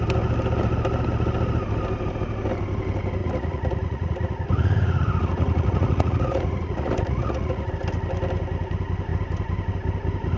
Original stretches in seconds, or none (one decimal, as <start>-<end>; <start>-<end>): 0.0-3.2; 7.7-10.4